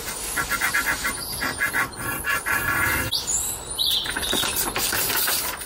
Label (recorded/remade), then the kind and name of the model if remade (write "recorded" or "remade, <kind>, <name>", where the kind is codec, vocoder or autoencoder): recorded